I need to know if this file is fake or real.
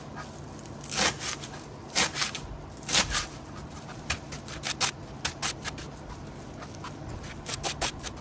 real